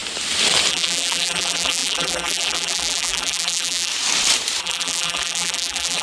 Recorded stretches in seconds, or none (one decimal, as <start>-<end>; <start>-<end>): 0.0-0.7; 3.9-4.6